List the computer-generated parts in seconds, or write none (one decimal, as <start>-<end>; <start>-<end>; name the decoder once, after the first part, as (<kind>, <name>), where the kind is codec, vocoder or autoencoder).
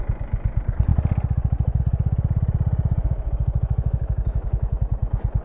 3.0-4.8 (autoencoder, DAC-VAE)